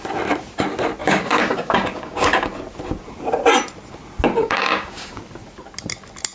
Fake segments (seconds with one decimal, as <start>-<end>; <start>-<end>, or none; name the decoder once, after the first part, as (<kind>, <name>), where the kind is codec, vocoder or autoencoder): 1.0-2.5 (codec, DAC); 4.4-5.2